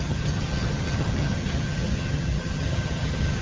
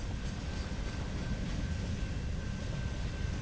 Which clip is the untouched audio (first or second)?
second